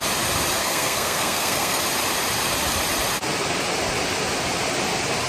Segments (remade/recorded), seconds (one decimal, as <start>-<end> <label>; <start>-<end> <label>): 0.0-0.6 recorded; 0.6-1.8 remade; 1.8-5.3 recorded